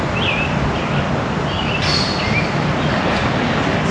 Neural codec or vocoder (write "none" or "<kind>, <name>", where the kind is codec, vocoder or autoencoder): none